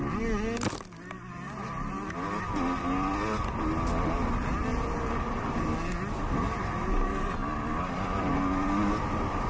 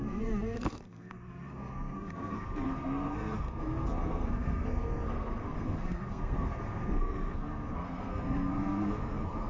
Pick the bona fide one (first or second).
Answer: first